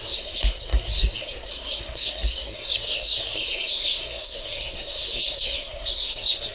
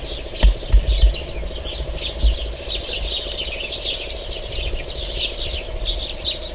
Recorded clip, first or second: second